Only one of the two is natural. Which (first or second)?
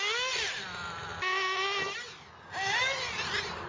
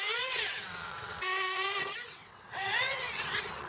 first